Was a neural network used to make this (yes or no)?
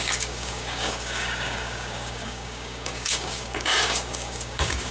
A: yes